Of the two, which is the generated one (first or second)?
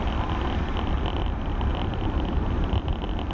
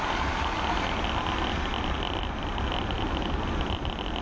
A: first